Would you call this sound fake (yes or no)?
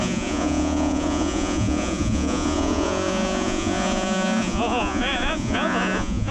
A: yes